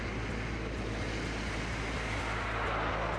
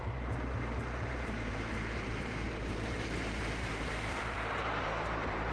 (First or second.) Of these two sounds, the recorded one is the first